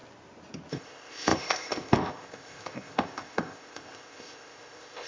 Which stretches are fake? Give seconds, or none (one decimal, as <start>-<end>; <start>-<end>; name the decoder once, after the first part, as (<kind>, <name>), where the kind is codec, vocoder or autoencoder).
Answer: 0.7-5.1 (codec, ZipCodec)